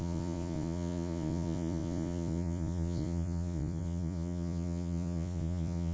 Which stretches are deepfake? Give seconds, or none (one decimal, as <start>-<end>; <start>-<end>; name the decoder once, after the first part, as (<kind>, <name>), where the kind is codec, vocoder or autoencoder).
0.0-5.9 (vocoder, Vocos)